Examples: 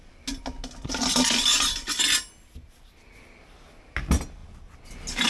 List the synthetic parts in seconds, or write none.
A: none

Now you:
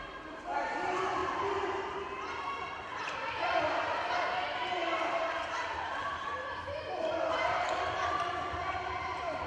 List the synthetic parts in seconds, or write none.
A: 0.0-9.5 (vocoder, BigVGAN v2)